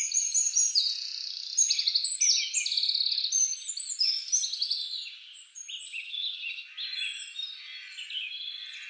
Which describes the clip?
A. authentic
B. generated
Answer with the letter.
A